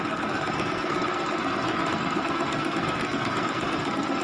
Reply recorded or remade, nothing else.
remade